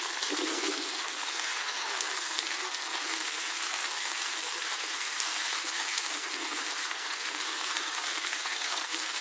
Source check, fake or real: fake